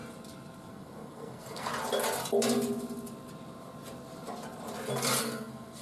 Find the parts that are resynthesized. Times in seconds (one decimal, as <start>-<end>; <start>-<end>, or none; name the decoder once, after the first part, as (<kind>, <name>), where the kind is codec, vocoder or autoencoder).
0.7-1.7 (codec, SNAC); 5.2-5.8